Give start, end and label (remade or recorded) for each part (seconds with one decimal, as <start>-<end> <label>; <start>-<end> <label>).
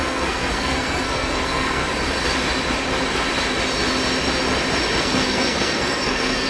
0.0-1.8 remade; 1.8-5.0 recorded; 5.0-6.5 remade